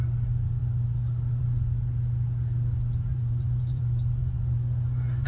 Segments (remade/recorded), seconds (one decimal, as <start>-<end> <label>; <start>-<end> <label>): 0.0-3.1 recorded; 3.1-3.8 remade; 3.8-4.2 recorded; 4.2-5.3 remade